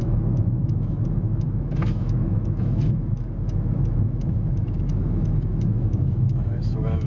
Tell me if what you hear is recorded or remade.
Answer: remade